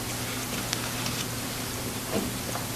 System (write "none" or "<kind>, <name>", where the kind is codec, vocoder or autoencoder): none